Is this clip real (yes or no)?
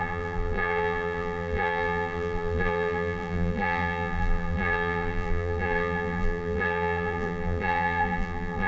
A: no